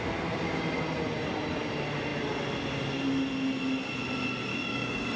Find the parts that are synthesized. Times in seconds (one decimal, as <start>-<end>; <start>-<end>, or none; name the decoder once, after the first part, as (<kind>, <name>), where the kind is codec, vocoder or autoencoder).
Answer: 4.5-5.2 (codec, DAC)